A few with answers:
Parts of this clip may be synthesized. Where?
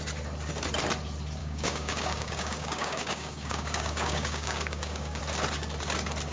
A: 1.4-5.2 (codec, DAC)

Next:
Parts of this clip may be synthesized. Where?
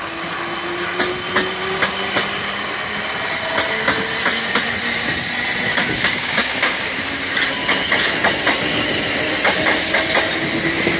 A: 5.7-7.0 (codec, DAC)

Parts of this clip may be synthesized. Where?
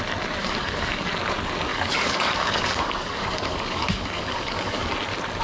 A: 0.4-1.1 (codec, DAC); 1.7-4.9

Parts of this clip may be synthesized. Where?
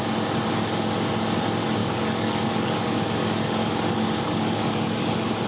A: 1.8-5.1 (codec, DAC)